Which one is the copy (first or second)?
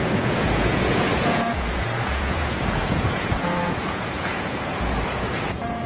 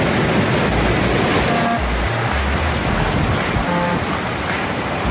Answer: first